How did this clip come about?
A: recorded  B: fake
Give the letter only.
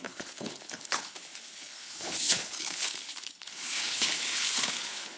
B